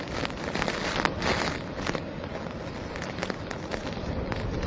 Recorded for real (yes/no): yes